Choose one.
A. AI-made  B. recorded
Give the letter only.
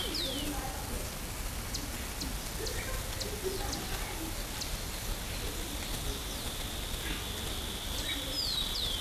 B